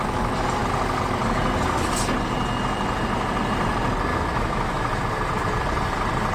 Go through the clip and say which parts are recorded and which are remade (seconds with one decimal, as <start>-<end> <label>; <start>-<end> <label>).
0.0-4.1 recorded; 4.1-5.0 remade; 5.0-6.3 recorded